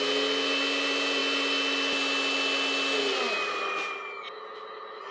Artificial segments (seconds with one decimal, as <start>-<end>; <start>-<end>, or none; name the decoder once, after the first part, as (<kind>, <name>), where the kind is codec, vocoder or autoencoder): none